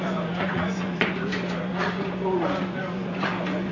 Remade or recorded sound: remade